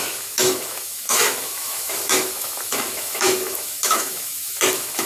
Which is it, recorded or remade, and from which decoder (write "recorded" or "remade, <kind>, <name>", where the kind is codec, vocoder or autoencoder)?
remade, autoencoder, DAC-VAE